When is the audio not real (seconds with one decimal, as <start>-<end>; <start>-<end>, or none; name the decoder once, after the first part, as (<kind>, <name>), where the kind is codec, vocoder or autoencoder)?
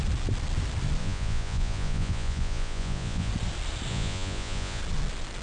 1.0-3.3 (vocoder, Vocos); 3.9-4.8